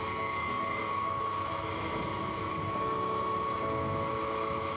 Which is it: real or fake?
fake